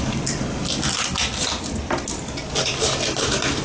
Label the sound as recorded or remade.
recorded